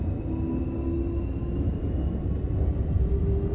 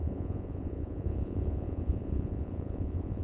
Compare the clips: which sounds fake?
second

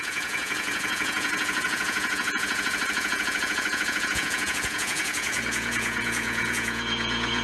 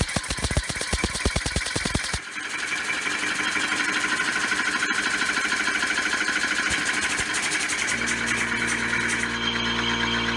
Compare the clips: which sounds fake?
first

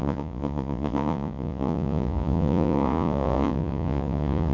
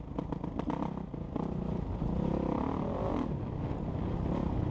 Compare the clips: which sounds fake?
first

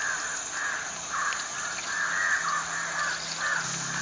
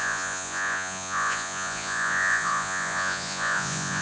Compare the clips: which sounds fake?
second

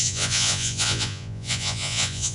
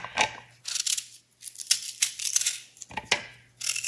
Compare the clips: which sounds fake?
first